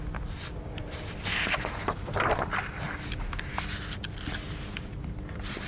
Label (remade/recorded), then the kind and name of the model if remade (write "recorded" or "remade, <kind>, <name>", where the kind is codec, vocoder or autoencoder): recorded